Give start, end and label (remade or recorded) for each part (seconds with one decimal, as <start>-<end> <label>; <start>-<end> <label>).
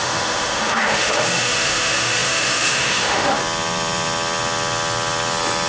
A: 0.0-3.4 remade; 3.4-5.7 recorded